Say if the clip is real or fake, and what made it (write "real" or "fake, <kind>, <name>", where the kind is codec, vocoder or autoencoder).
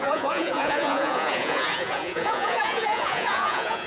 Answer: fake, vocoder, Vocos